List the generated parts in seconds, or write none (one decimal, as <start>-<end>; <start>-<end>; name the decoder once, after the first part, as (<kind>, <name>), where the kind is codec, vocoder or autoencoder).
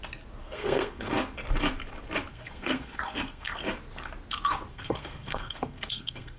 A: 0.4-1.1 (codec, SNAC); 2.3-3.6; 4.7-6.4